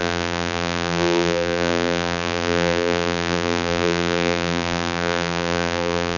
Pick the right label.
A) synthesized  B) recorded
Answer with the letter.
A